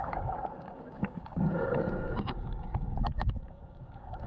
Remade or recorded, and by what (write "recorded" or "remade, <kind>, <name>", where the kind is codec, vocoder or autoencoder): remade, codec, DAC